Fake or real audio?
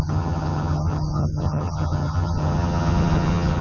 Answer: fake